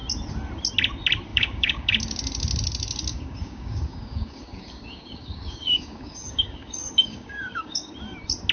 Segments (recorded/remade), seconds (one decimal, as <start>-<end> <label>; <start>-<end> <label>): 0.0-1.3 recorded; 1.3-2.0 remade; 2.0-3.1 recorded; 3.1-7.9 remade; 7.9-8.5 recorded